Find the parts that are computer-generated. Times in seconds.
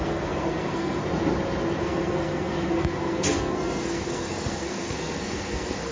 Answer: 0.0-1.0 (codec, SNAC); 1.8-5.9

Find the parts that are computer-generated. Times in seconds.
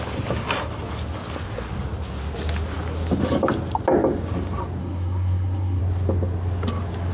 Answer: 4.8-5.8 (codec, SNAC)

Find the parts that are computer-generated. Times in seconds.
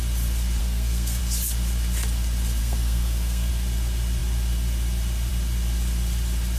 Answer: 0.6-1.2 (codec, SNAC); 2.6-3.5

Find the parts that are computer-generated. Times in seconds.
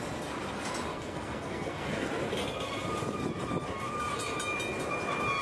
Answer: 0.9-2.1 (codec, SNAC)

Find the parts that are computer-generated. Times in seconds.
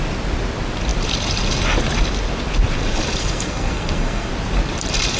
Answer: 3.2-4.3 (codec, SNAC)